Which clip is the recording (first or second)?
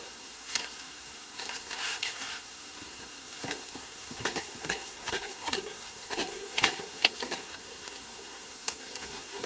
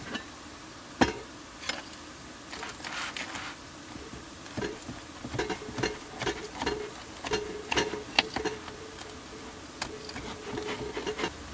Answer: second